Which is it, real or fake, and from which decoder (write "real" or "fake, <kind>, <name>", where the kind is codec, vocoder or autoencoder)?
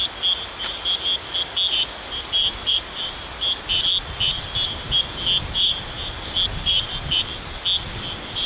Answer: real